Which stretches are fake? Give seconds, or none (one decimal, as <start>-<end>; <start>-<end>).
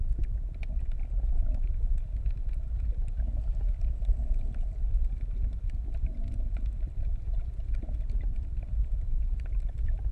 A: 8.3-10.1